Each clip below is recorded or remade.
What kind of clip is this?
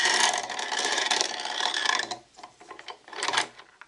remade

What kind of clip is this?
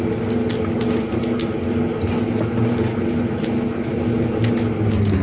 recorded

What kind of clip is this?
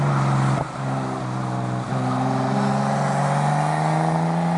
recorded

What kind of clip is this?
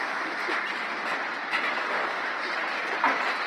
recorded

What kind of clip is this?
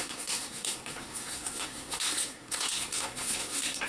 remade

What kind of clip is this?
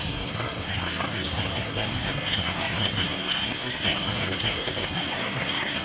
remade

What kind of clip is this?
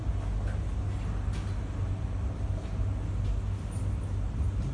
recorded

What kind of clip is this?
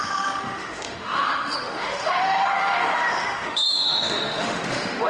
remade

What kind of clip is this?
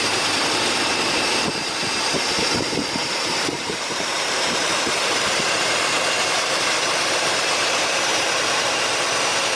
remade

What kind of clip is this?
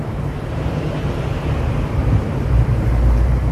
remade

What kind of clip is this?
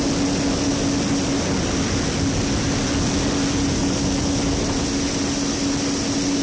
recorded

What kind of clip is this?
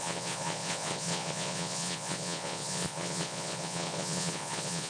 remade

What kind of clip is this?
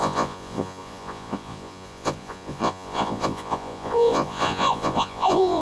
remade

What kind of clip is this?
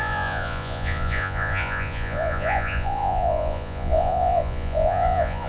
remade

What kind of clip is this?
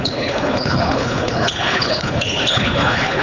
remade